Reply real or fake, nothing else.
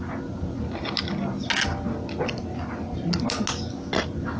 real